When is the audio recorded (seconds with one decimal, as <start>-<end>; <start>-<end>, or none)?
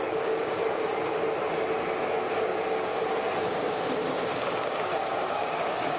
0.6-2.3; 2.9-3.4